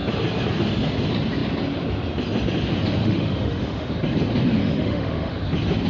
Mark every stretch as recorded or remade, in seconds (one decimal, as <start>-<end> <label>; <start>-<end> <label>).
0.0-3.0 recorded; 3.0-3.9 remade; 3.9-4.6 recorded; 4.6-5.3 remade; 5.3-5.9 recorded